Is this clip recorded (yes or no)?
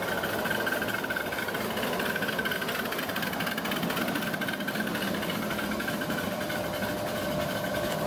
yes